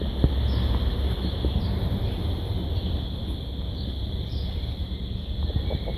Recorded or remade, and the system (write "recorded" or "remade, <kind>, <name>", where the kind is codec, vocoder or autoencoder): recorded